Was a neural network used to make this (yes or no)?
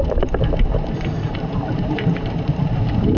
yes